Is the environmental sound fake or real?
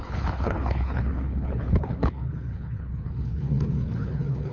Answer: fake